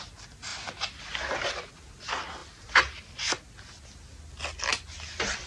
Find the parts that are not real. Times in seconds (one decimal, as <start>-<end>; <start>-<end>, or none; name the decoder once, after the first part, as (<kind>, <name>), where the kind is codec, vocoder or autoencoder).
none